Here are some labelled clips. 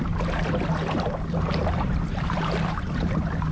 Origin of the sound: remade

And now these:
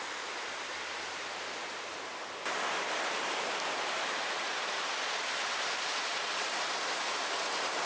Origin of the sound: recorded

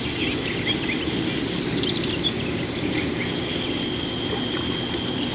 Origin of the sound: recorded